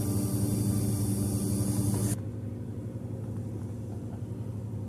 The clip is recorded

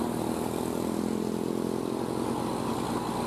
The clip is recorded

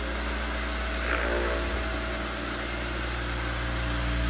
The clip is recorded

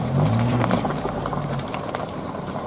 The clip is remade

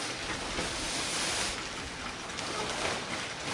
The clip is recorded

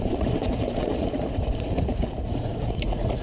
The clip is remade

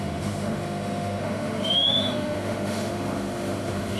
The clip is remade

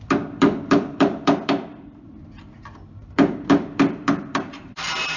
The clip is remade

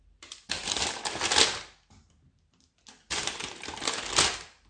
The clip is recorded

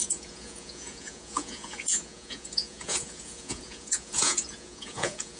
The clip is remade